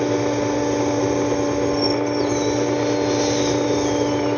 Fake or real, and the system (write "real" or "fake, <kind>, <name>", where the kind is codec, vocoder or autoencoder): real